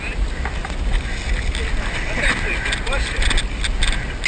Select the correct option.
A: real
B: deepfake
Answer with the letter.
A